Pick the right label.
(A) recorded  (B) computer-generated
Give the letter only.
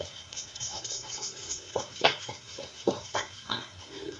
B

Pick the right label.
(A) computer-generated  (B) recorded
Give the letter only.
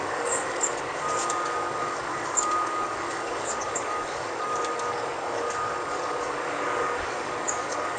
A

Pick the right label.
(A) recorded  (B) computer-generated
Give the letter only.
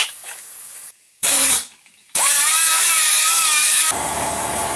B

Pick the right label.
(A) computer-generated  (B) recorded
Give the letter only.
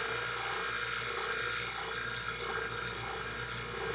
B